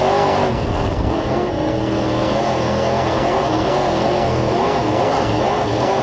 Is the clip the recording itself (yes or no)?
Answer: no